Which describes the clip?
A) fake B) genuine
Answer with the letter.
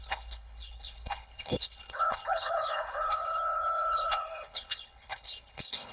A